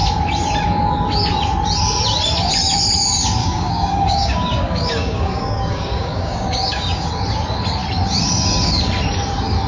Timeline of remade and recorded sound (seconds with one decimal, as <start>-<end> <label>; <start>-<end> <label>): 0.0-3.4 recorded; 3.4-7.1 remade; 7.1-9.7 recorded